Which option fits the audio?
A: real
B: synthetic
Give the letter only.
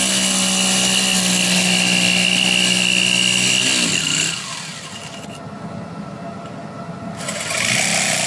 A